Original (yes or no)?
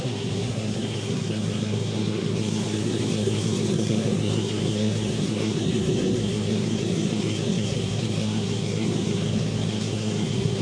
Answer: no